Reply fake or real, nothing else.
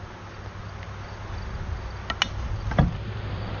real